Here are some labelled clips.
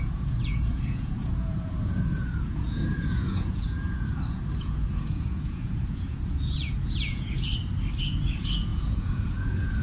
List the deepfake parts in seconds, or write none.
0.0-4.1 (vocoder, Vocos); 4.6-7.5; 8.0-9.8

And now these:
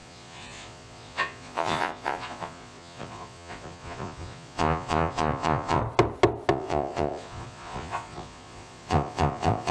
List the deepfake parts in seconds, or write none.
0.0-5.8 (vocoder, Vocos); 6.5-9.7

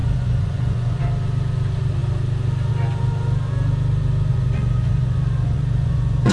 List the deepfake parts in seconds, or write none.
0.0-1.0 (vocoder, Vocos); 4.3-6.3